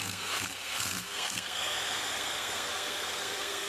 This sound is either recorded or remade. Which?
remade